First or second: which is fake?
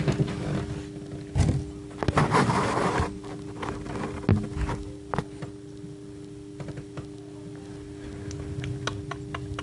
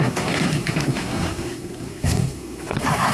second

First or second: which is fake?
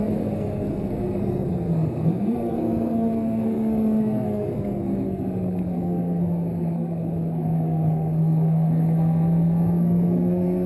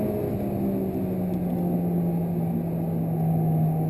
first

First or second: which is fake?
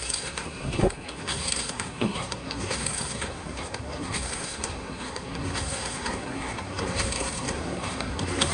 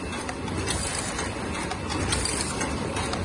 first